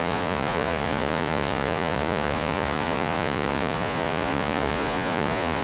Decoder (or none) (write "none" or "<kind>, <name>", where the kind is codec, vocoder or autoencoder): vocoder, Vocos